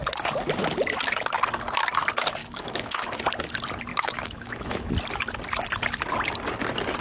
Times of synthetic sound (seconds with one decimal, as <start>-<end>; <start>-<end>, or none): 2.4-3.0; 3.9-4.9